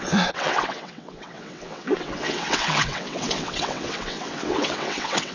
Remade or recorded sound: remade